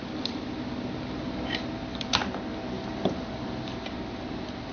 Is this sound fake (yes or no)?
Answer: no